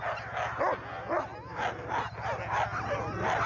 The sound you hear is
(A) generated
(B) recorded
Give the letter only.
B